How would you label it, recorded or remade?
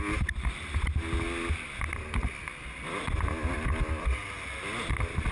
recorded